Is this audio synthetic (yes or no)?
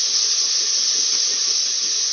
yes